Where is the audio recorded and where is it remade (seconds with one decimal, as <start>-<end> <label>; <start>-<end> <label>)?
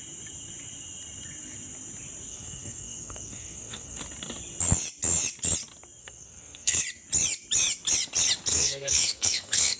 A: 0.0-2.3 recorded; 2.3-4.0 remade; 4.0-6.0 recorded; 6.0-6.8 remade; 6.8-8.5 recorded; 8.5-9.8 remade